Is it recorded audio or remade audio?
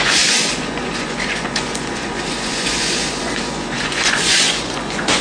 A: remade